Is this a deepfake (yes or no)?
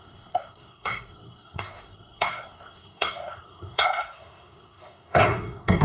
yes